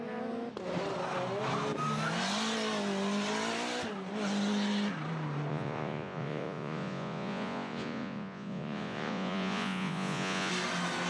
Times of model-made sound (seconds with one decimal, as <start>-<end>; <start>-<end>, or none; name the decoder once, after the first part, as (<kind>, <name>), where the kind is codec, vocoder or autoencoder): 5.5-10.5 (vocoder, Vocos)